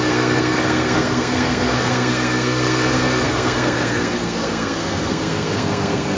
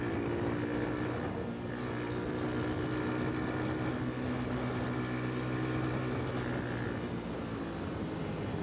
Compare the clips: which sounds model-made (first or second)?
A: first